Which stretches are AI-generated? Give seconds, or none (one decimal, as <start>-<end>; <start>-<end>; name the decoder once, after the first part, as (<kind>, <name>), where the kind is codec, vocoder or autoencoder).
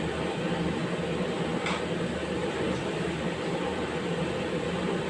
0.0-0.8 (vocoder, BigVGAN v2); 2.4-5.1